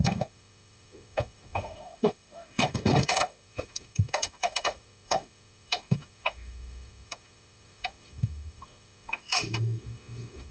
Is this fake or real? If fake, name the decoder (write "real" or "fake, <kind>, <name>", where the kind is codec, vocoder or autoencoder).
fake, autoencoder, DAC-VAE